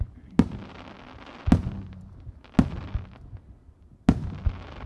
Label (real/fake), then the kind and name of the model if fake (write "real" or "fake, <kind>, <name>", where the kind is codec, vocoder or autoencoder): real